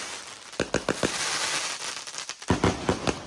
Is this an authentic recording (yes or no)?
yes